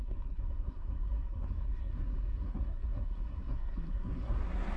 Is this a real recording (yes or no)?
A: no